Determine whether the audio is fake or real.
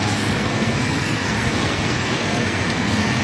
fake